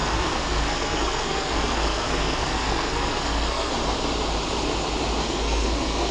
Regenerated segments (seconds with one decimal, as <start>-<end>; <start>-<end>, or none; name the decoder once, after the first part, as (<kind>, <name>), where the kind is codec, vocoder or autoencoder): 0.0-3.7 (codec, SNAC); 5.2-6.1